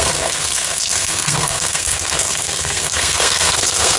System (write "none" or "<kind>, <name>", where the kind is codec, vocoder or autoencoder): codec, SNAC